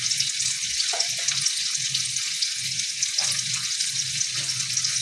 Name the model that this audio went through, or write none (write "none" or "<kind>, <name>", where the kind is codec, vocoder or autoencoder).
vocoder, Vocos